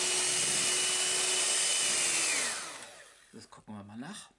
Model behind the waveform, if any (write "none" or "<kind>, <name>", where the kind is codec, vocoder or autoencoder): none